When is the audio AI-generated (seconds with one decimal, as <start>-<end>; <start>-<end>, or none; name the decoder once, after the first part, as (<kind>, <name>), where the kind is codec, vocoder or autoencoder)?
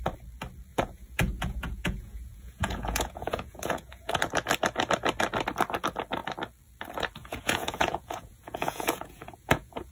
0.7-4.2 (vocoder, Vocos); 7.2-9.9